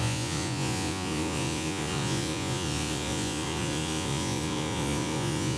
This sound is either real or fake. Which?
fake